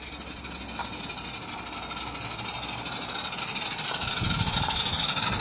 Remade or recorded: recorded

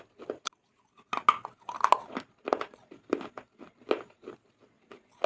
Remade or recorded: recorded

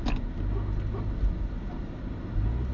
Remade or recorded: recorded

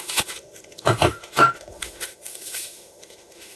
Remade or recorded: remade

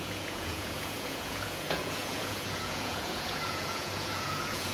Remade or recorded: remade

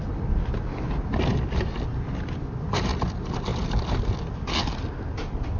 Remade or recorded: recorded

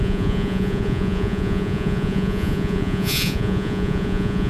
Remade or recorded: remade